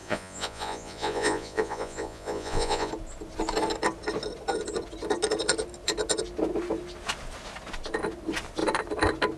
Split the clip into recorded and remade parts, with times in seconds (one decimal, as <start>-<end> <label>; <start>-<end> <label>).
0.0-2.9 remade; 2.9-9.4 recorded